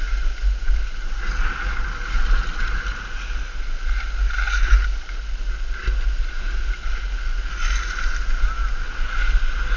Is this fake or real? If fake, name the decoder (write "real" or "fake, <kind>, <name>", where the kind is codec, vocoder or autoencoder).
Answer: real